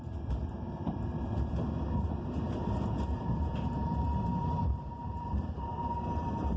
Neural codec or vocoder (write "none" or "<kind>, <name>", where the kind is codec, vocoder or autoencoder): vocoder, BigVGAN v2